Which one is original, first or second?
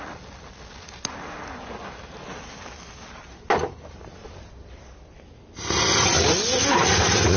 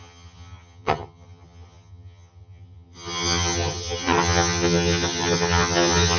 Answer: first